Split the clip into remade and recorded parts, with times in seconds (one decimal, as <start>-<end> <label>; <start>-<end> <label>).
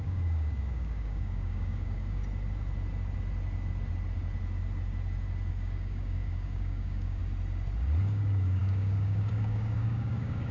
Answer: 0.0-2.2 remade; 2.2-5.5 recorded; 5.5-7.2 remade; 7.2-8.0 recorded; 8.0-10.5 remade